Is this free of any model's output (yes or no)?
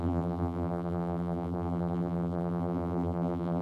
no